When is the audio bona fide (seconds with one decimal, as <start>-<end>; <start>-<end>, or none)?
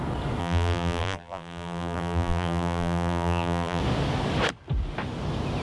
0.0-0.4; 3.8-5.6